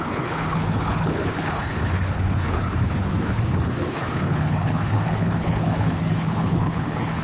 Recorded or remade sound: remade